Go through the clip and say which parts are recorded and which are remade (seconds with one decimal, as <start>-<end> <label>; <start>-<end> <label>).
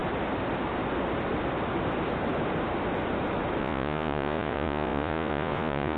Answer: 0.0-3.6 recorded; 3.6-6.0 remade